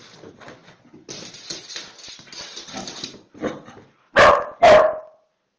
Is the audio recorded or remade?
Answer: recorded